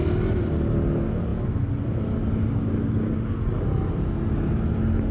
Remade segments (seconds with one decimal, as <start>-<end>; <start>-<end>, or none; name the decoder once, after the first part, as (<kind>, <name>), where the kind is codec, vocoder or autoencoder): none